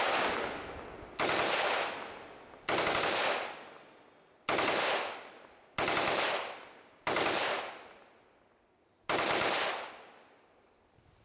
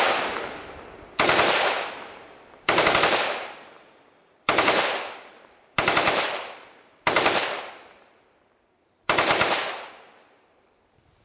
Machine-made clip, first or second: second